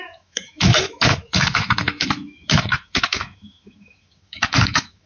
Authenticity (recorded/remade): remade